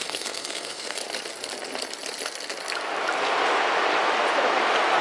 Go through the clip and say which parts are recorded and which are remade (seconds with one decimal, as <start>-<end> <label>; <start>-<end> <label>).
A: 0.0-1.0 remade; 1.0-5.0 recorded